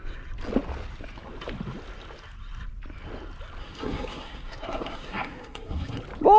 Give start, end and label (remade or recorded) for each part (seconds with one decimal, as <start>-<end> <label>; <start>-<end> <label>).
0.0-3.6 recorded; 3.6-6.0 remade; 6.0-6.4 recorded